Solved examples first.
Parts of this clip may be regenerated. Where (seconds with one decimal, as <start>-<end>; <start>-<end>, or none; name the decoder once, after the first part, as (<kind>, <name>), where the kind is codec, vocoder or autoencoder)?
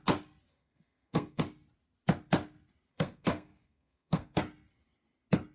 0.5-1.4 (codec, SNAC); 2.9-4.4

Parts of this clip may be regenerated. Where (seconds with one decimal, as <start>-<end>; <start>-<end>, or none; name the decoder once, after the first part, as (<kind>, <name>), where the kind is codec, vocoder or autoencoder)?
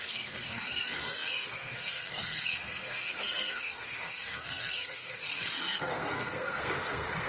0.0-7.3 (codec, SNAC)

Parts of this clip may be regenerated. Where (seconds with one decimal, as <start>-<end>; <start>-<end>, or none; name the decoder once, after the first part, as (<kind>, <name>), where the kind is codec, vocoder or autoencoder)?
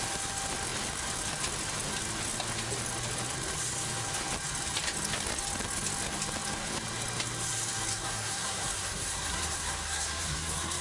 7.9-10.8 (codec, SNAC)